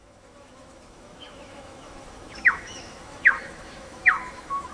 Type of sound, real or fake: fake